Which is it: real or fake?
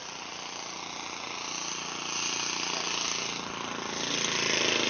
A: real